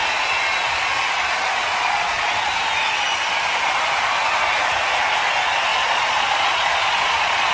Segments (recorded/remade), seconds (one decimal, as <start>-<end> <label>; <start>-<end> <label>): 0.0-1.6 recorded; 1.6-2.5 remade; 2.5-5.7 recorded; 5.7-7.5 remade

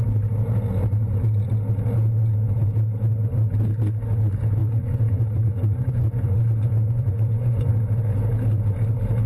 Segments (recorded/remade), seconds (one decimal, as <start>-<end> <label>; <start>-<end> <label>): 0.0-4.6 recorded; 4.6-7.7 remade; 7.7-9.3 recorded

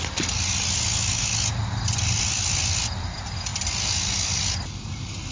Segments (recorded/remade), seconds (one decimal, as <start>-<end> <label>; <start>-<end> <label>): 0.0-5.3 recorded